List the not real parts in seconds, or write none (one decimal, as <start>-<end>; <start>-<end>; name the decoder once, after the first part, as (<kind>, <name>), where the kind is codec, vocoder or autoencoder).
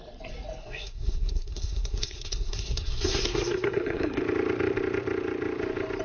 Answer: 0.6-4.2 (codec, SNAC)